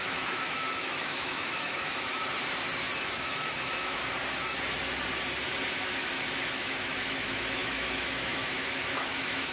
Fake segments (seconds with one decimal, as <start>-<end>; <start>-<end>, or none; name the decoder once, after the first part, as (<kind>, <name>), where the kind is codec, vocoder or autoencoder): 0.0-2.2 (autoencoder, DAC-VAE); 3.0-4.0; 6.5-9.5